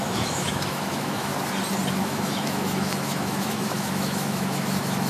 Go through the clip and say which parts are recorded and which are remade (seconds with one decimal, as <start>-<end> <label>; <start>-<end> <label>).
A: 0.0-1.3 remade; 1.3-1.9 recorded; 1.9-5.1 remade